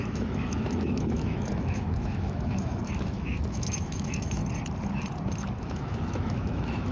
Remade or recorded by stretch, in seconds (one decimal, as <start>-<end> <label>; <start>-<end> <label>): 0.0-4.4 remade; 4.4-5.6 recorded; 5.6-6.9 remade